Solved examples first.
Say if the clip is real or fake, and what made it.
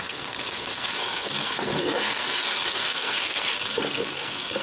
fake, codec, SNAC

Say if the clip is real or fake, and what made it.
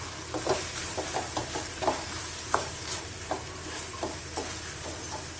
real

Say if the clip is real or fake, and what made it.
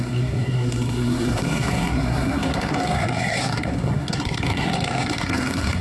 fake, codec, SNAC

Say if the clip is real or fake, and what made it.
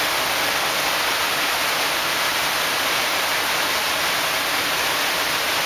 real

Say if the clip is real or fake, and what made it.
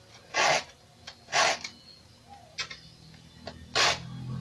real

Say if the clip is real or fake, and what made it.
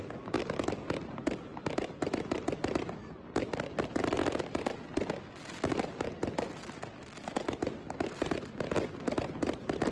real